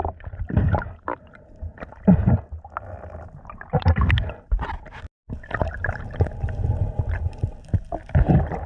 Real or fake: real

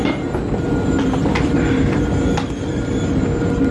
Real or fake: real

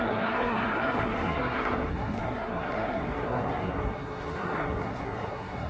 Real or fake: fake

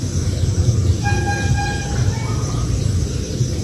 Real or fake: fake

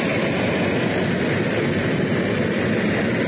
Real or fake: real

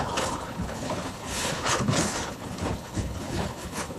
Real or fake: fake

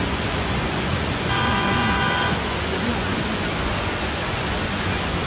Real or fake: fake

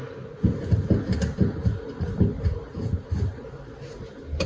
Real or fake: real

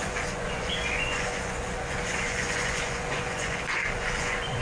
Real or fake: fake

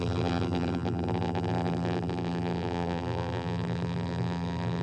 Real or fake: fake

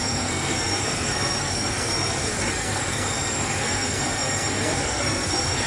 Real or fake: fake